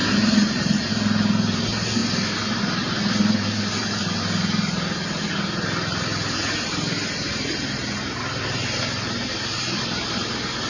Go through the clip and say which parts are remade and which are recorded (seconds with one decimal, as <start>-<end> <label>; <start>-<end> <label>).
0.0-2.0 remade; 2.0-2.6 recorded; 2.6-10.7 remade